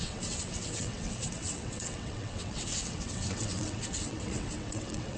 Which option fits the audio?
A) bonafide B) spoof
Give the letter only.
B